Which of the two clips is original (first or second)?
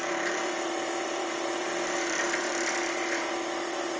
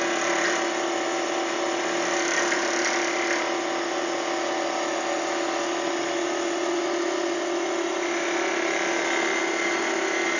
second